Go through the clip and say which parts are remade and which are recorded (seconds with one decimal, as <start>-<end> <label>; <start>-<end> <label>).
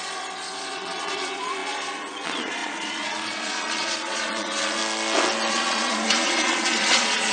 0.0-4.8 remade; 4.8-5.5 recorded; 5.5-7.3 remade